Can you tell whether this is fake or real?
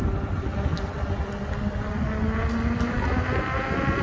real